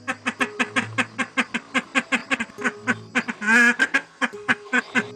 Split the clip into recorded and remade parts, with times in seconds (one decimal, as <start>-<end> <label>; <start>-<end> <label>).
0.0-3.8 recorded; 3.8-4.8 remade; 4.8-5.2 recorded